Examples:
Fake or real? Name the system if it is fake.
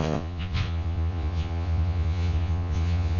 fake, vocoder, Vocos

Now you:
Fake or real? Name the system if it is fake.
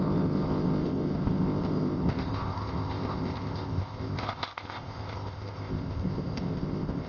fake, codec, ZipCodec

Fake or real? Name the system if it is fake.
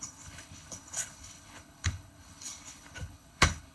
fake, codec, HILCodec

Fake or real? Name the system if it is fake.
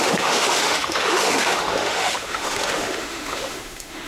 fake, autoencoder, DAC-VAE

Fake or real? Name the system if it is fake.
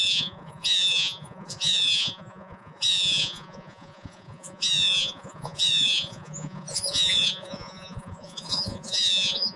fake, vocoder, Vocos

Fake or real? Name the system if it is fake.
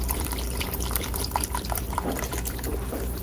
fake, vocoder, BigVGAN v2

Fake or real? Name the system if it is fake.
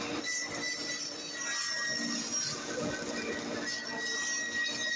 real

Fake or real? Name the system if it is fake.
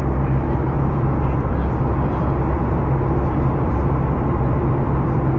fake, vocoder, BigVGAN v2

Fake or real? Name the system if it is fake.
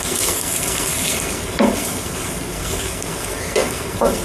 fake, codec, SNAC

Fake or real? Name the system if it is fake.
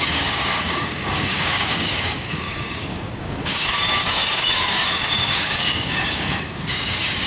fake, codec, DAC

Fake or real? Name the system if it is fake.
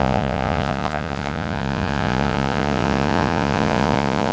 fake, vocoder, Vocos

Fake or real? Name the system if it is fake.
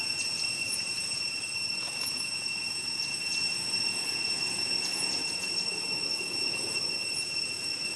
fake, vocoder, Vocos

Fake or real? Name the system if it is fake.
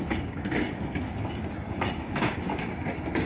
fake, codec, DAC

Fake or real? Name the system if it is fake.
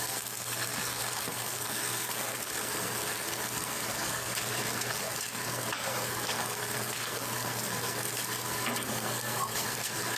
fake, codec, SNAC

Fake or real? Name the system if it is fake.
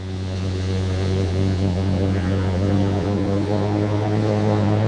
fake, vocoder, Vocos